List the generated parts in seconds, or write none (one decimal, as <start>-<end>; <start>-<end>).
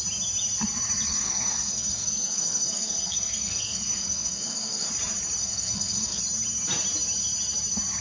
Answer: 1.1-4.9; 5.4-6.2